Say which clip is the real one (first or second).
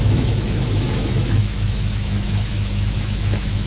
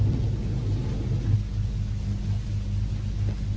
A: second